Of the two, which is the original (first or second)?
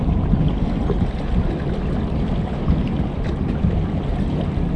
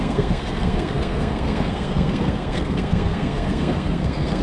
first